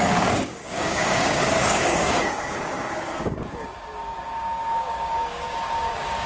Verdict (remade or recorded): remade